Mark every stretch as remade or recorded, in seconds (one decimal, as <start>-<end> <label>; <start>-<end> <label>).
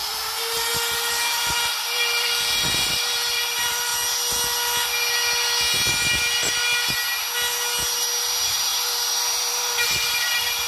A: 0.0-3.9 remade; 3.9-8.2 recorded; 8.2-10.7 remade